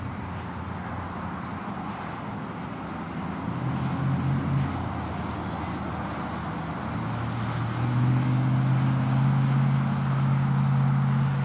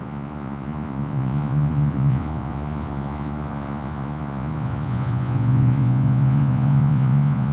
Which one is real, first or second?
first